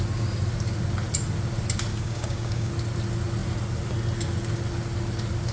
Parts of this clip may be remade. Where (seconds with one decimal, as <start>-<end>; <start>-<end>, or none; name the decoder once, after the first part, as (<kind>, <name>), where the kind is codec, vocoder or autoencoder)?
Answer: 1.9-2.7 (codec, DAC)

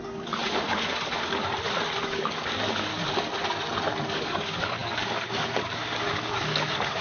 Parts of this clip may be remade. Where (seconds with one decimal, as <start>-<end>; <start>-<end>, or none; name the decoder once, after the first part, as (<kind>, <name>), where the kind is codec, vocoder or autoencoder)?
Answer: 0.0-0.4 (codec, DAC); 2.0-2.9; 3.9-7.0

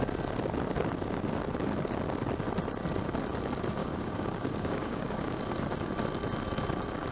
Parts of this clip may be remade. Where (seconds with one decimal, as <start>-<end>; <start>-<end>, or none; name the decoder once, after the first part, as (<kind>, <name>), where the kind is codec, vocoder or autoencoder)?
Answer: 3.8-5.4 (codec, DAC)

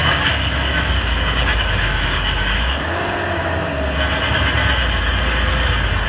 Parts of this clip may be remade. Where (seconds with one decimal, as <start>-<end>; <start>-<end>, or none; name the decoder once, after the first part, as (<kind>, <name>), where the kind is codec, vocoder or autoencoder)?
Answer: 0.0-3.7 (codec, DAC)

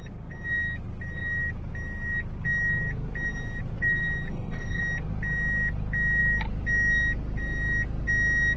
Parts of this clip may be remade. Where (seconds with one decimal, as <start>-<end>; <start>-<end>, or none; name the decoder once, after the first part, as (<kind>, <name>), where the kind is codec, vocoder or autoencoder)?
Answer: 4.3-4.8 (codec, DAC)

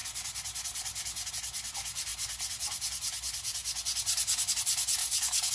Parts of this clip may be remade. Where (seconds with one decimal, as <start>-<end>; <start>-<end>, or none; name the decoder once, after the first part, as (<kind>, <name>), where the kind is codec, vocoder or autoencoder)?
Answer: 5.0-5.5 (codec, DAC)